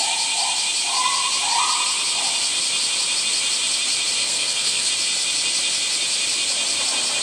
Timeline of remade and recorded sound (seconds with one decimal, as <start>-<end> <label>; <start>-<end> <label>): 0.0-4.2 recorded; 4.2-4.9 remade; 4.9-7.2 recorded